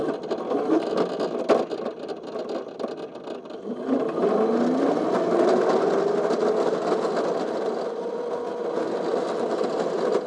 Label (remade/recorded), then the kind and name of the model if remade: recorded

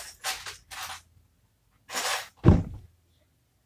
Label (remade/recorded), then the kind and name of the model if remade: recorded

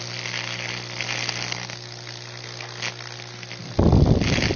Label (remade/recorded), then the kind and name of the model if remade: recorded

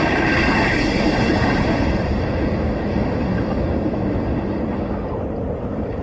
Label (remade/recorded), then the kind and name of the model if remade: recorded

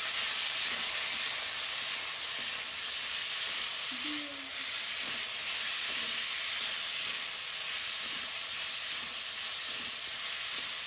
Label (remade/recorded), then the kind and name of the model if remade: recorded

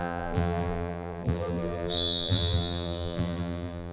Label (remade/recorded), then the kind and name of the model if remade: remade, vocoder, BigVGAN v2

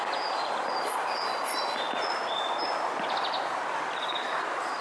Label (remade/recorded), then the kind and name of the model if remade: recorded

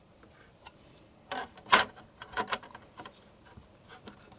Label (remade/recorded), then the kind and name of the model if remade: remade, vocoder, BigVGAN v2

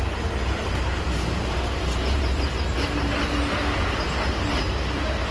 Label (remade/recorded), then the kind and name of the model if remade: recorded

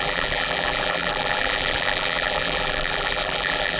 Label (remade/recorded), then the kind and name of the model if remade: remade, vocoder, BigVGAN v2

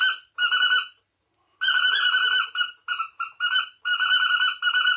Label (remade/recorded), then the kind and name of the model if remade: remade, vocoder, BigVGAN v2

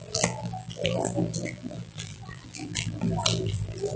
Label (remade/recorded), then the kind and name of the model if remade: remade, vocoder, BigVGAN v2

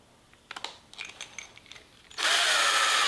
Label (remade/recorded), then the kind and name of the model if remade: recorded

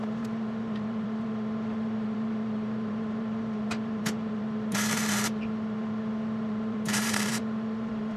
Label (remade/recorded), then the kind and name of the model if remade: remade, vocoder, BigVGAN v2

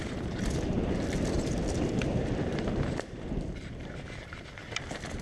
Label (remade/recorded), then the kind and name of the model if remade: remade, vocoder, BigVGAN v2